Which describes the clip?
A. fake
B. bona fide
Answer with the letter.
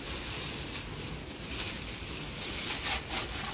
B